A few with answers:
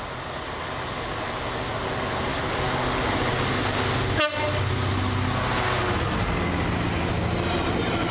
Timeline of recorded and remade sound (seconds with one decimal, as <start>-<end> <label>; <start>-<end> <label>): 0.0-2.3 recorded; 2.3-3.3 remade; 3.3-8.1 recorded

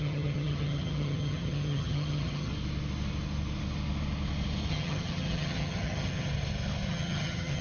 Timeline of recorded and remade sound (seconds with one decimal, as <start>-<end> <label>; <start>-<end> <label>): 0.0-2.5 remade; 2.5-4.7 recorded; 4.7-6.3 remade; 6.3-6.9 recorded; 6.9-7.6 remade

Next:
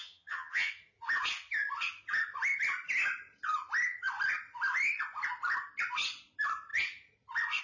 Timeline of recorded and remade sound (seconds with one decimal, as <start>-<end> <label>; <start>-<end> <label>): 0.0-0.7 remade; 0.7-7.6 recorded